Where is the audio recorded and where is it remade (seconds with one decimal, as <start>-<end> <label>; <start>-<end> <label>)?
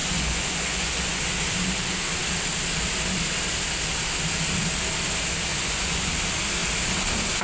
0.0-1.2 remade; 1.2-5.5 recorded; 5.5-6.1 remade; 6.1-7.4 recorded